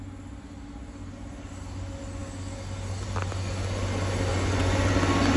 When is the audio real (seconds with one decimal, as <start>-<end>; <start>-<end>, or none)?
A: 0.0-4.3; 4.9-5.4